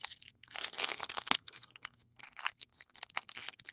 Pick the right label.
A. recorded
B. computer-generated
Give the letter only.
B